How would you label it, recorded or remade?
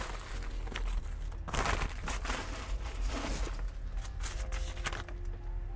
recorded